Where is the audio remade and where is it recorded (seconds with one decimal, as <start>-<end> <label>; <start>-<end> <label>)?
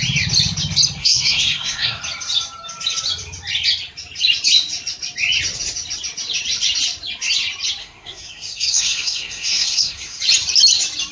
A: 0.0-1.0 recorded; 1.0-2.0 remade; 2.0-7.8 recorded; 7.8-10.2 remade; 10.2-11.1 recorded